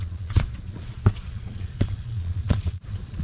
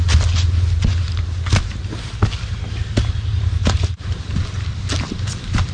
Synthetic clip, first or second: first